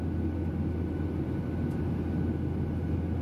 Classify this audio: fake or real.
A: real